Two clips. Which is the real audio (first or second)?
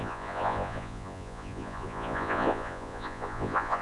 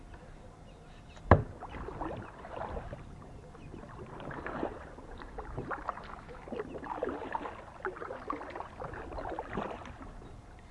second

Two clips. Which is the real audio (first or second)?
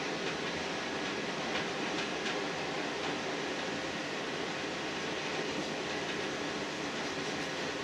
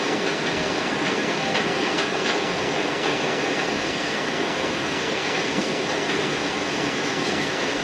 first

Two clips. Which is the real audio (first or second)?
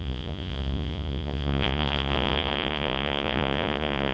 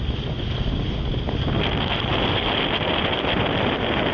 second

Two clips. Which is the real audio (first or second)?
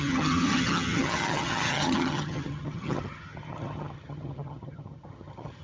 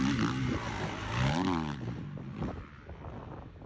second